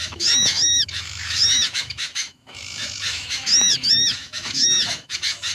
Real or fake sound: fake